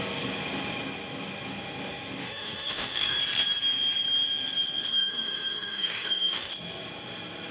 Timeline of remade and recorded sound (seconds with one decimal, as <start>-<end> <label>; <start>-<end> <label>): 0.0-2.2 recorded; 2.2-3.2 remade; 3.2-4.9 recorded; 4.9-6.5 remade; 6.5-7.5 recorded